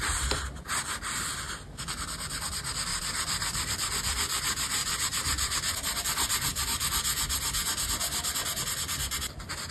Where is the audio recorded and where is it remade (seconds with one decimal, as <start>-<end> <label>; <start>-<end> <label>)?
0.0-2.9 recorded; 2.9-3.7 remade; 3.7-4.8 recorded; 4.8-6.0 remade; 6.0-9.7 recorded